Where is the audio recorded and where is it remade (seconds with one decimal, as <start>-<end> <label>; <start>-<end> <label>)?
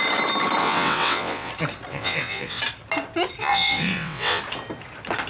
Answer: 0.0-0.6 recorded; 0.6-1.5 remade; 1.5-1.9 recorded; 1.9-2.6 remade; 2.6-3.4 recorded; 3.4-4.4 remade; 4.4-5.3 recorded